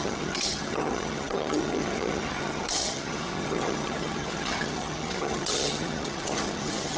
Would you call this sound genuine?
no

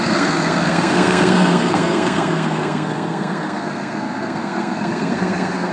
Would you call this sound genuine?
no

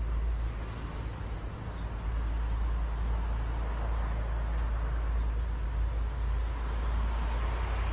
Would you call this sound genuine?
yes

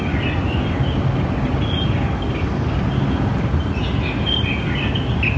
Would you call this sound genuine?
yes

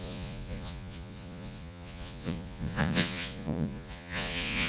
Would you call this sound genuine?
no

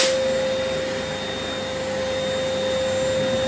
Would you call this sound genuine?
yes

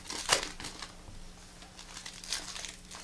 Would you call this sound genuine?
yes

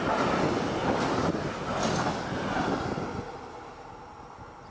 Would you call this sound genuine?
yes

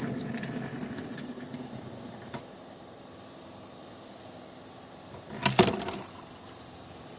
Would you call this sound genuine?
no